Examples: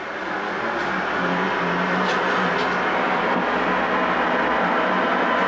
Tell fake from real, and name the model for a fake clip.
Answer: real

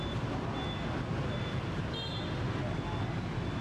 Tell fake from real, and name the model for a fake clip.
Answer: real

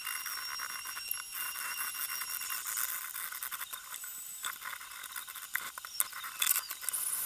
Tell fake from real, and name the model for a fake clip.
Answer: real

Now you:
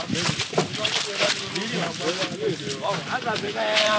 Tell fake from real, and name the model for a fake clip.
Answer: real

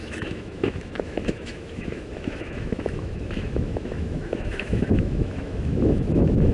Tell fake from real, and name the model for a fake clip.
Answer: fake, autoencoder, DAC-VAE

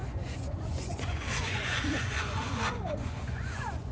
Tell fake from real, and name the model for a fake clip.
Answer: fake, vocoder, Vocos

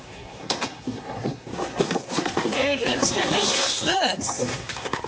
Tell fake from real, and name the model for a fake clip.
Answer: fake, codec, SNAC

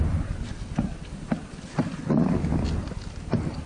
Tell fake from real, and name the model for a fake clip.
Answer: real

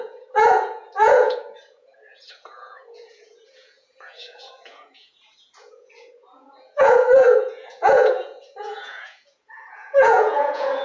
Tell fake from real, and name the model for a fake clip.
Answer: fake, vocoder, Vocos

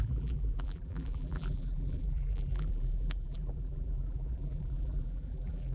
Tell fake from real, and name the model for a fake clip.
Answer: fake, vocoder, BigVGAN v2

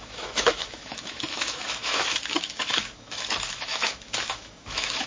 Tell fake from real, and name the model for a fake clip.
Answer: fake, autoencoder, DAC-VAE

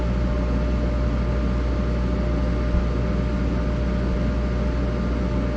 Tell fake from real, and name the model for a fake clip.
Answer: real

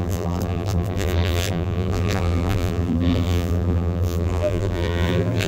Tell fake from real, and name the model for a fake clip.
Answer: fake, vocoder, BigVGAN v2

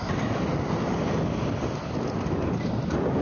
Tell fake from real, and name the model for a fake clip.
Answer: real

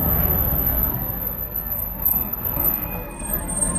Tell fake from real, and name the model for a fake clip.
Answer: fake, codec, SNAC